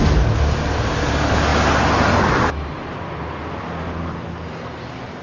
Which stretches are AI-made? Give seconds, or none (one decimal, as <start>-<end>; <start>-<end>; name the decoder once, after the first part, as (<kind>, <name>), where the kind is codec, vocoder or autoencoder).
none